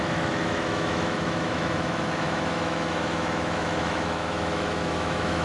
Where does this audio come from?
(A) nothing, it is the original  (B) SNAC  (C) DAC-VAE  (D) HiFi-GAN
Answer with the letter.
C